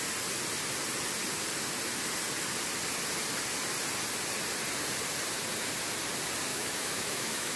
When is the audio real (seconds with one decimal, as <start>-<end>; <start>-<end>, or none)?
0.0-6.5